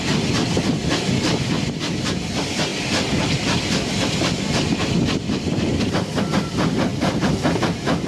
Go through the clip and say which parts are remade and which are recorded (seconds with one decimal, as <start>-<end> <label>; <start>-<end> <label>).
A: 0.0-8.1 recorded